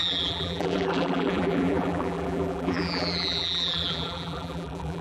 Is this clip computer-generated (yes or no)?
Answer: yes